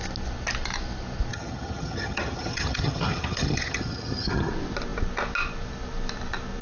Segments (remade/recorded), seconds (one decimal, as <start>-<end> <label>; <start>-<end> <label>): 0.0-1.3 recorded; 1.3-4.5 remade; 4.5-6.6 recorded